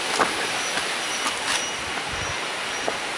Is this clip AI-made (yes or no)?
no